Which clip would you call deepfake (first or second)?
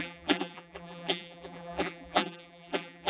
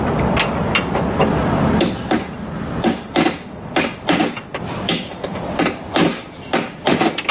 first